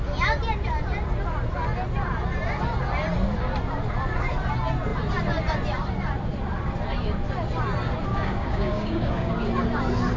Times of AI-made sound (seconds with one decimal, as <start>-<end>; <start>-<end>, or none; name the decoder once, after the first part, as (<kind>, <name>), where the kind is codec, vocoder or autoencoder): 8.1-9.3 (codec, DAC)